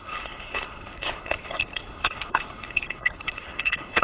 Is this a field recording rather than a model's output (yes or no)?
no